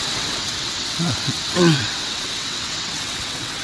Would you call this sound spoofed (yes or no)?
yes